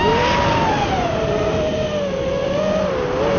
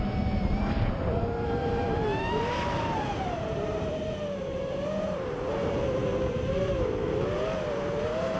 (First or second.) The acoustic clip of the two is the first